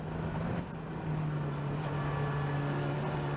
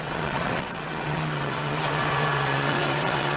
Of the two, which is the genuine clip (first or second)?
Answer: first